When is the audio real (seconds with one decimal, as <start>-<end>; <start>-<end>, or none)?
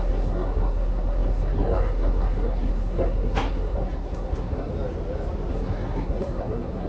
4.7-5.5